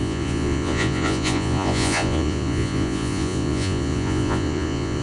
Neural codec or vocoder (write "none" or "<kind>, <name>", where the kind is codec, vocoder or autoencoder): vocoder, Vocos